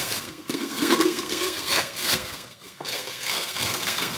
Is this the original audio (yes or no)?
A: no